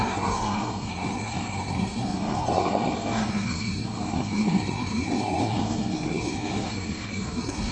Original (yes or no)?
no